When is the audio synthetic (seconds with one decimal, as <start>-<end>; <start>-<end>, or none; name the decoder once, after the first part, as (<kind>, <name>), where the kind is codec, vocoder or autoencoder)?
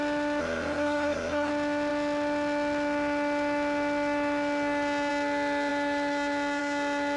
0.4-1.5 (codec, SNAC)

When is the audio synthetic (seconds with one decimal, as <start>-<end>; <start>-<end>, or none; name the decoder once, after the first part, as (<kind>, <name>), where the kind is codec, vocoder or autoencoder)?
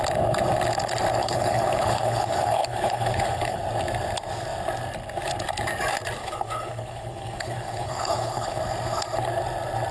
1.2-3.6 (codec, HILCodec); 6.2-8.6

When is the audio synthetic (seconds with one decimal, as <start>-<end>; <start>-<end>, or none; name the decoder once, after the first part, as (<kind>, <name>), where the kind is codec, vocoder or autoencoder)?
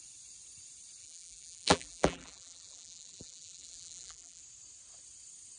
1.0-4.4 (vocoder, BigVGAN v2)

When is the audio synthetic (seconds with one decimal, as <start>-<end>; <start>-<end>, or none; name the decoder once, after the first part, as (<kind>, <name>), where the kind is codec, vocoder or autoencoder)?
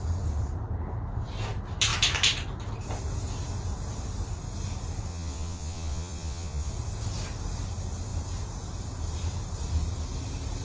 5.1-6.7 (vocoder, Vocos)